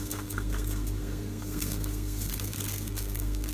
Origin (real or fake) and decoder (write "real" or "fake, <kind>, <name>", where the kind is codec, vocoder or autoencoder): fake, codec, SNAC